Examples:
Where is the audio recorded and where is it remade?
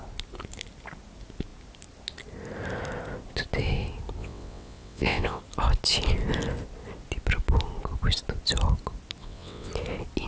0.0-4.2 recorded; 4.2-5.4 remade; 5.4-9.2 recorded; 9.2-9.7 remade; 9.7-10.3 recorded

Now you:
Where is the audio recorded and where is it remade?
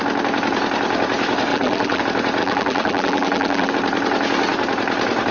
0.0-1.5 recorded; 1.5-2.0 remade; 2.0-2.4 recorded; 2.4-3.7 remade; 3.7-5.3 recorded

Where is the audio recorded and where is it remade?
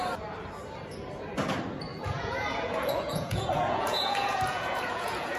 0.0-1.9 recorded; 1.9-5.4 remade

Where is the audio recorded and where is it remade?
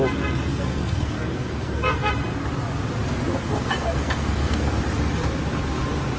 0.0-0.5 recorded; 0.5-2.1 remade; 2.1-3.3 recorded; 3.3-4.8 remade; 4.8-6.2 recorded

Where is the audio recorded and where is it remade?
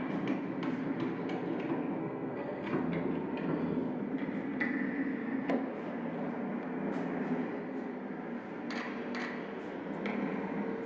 0.0-2.0 recorded; 2.0-2.7 remade; 2.7-10.9 recorded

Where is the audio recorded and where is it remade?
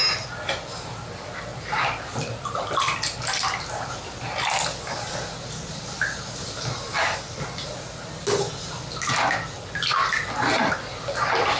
0.0-11.6 recorded